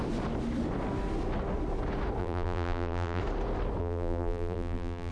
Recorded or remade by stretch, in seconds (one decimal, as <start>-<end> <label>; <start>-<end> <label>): 0.0-2.2 recorded; 2.2-3.2 remade; 3.2-3.8 recorded; 3.8-5.1 remade